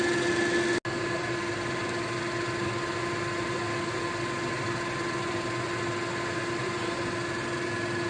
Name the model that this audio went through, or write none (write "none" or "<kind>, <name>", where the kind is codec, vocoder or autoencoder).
none